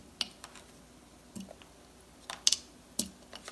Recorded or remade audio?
recorded